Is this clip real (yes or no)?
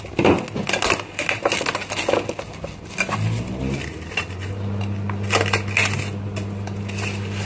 yes